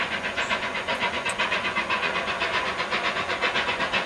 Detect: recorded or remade remade